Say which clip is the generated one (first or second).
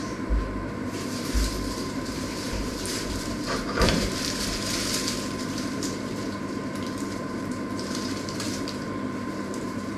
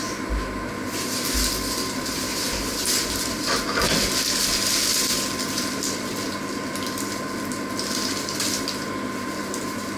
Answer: first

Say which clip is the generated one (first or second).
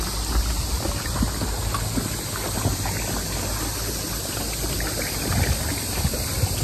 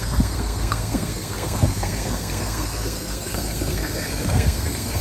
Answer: second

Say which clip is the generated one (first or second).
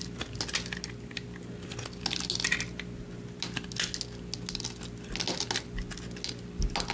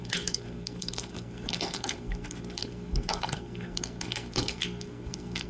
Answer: second